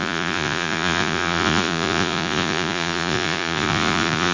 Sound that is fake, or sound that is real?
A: fake